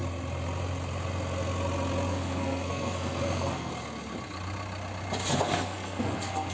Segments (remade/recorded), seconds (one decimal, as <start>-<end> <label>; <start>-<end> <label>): 0.0-2.1 recorded; 2.1-3.7 remade; 3.7-5.4 recorded; 5.4-6.5 remade